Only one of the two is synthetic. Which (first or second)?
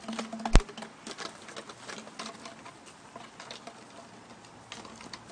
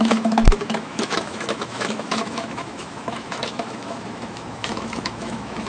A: second